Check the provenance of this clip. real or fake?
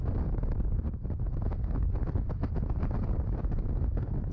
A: real